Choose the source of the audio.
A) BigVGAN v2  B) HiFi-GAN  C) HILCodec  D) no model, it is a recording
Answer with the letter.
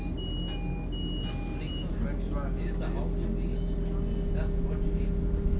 D